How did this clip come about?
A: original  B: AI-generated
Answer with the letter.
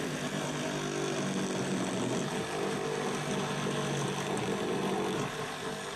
A